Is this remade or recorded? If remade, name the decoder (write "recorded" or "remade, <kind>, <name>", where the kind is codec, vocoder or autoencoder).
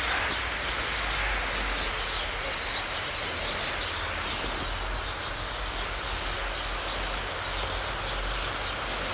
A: recorded